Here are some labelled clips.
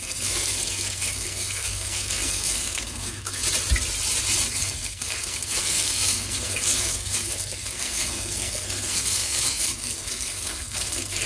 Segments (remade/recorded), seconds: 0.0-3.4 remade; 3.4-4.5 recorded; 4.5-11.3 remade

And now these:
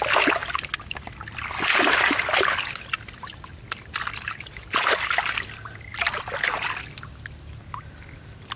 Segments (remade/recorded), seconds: 0.0-8.6 recorded

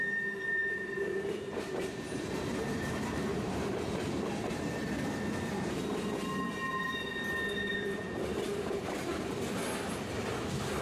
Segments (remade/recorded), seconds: 0.0-0.6 recorded; 0.6-5.2 remade; 5.2-7.6 recorded; 7.6-9.9 remade; 9.9-10.8 recorded

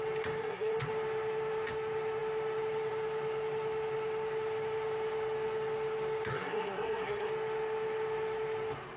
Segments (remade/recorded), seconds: 0.0-0.4 recorded; 0.4-0.9 remade; 0.9-6.3 recorded; 6.3-7.3 remade; 7.3-9.0 recorded

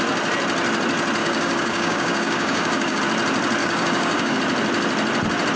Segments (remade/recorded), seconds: 0.0-1.2 recorded; 1.2-3.0 remade; 3.0-3.6 recorded; 3.6-4.4 remade; 4.4-5.6 recorded

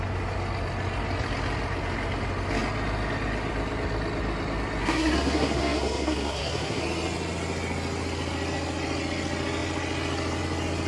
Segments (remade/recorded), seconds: 0.0-4.8 recorded; 4.8-6.8 remade; 6.8-10.9 recorded